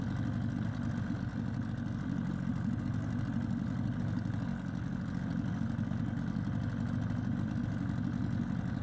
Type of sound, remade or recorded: recorded